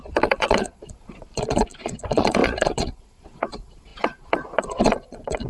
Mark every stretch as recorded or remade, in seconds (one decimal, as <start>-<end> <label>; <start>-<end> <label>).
0.0-5.5 remade